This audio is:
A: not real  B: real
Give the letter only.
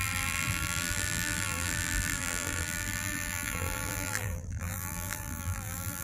A